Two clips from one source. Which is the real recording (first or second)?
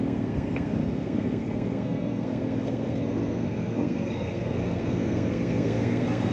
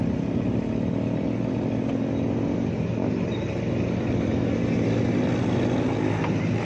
second